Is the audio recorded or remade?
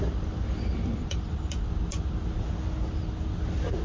recorded